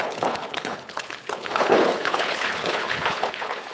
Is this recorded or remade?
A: remade